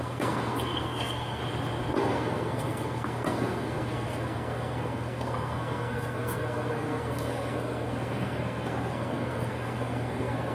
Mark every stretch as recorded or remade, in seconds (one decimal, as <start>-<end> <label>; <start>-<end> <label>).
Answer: 0.0-1.4 remade; 1.4-2.0 recorded; 2.0-10.5 remade